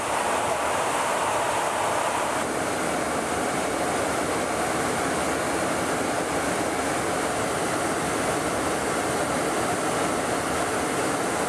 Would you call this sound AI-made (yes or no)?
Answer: no